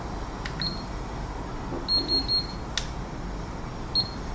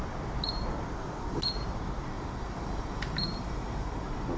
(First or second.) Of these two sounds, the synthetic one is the second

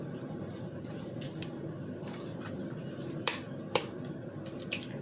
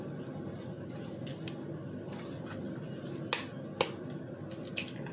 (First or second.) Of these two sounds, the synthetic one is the first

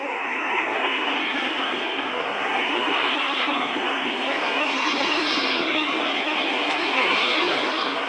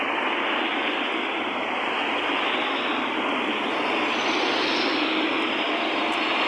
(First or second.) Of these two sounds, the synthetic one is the first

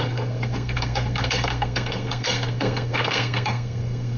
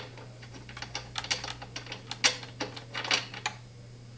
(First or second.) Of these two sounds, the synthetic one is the first